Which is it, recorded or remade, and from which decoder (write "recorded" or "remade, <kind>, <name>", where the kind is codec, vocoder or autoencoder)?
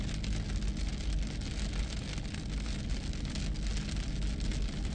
recorded